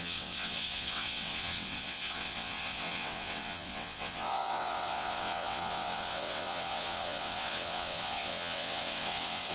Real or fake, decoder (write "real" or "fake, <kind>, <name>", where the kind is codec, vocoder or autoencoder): fake, vocoder, WaveNeXt